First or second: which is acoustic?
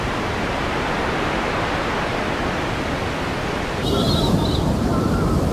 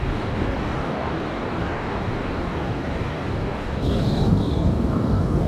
first